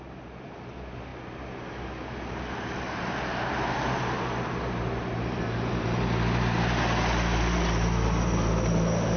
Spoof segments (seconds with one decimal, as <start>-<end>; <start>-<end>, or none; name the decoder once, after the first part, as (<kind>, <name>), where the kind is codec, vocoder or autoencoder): none